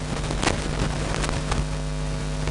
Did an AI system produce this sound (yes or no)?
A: no